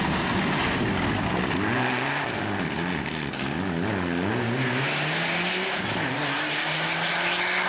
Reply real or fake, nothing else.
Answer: real